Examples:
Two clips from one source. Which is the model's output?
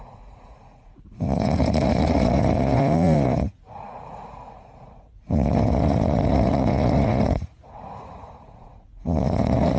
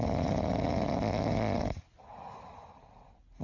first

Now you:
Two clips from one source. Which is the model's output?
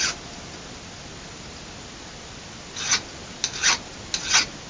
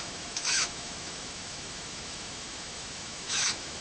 second